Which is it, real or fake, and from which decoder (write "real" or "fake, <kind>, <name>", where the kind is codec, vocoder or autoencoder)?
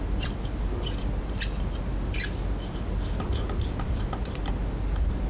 real